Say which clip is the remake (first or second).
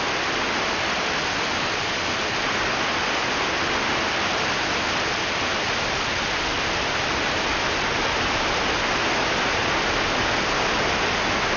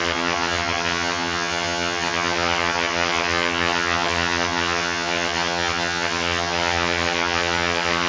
second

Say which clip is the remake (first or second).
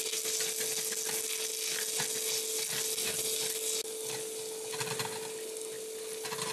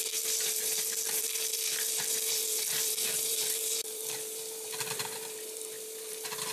second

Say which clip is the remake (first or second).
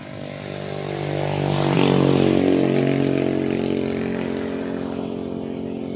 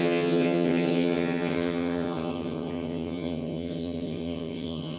second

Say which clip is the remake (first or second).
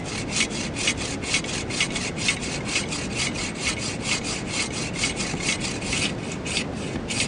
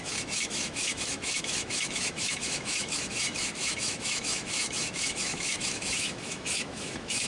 second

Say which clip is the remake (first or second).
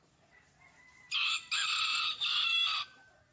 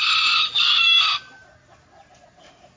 first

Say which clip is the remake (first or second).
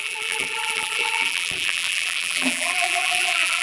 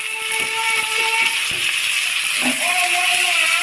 first